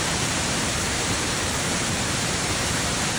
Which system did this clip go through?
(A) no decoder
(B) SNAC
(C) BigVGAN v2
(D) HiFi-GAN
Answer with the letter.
C